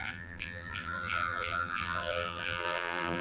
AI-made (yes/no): yes